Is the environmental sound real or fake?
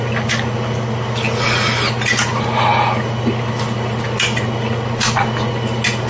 real